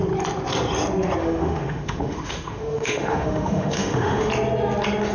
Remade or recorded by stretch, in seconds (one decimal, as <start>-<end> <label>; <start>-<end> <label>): 0.0-1.2 recorded; 1.2-4.3 remade; 4.3-5.1 recorded